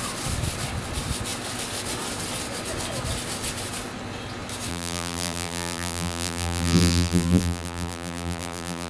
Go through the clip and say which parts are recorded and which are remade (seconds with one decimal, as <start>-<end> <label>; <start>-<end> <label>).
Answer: 0.0-4.7 recorded; 4.7-8.9 remade

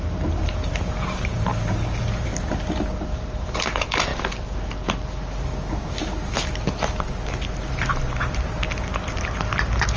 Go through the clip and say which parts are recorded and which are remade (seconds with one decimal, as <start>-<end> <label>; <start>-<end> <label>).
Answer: 0.0-2.3 remade; 2.3-2.9 recorded; 2.9-4.1 remade; 4.1-5.7 recorded; 5.7-6.5 remade; 6.5-7.7 recorded; 7.7-10.0 remade

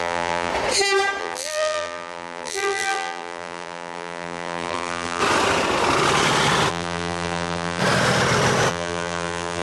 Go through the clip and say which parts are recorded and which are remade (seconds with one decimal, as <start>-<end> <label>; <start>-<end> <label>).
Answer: 0.0-0.5 remade; 0.5-1.2 recorded; 1.2-5.2 remade; 5.2-6.7 recorded; 6.7-7.8 remade; 7.8-8.7 recorded; 8.7-9.6 remade